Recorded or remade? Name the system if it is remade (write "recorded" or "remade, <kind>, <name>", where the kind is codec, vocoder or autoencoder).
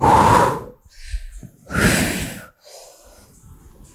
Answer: recorded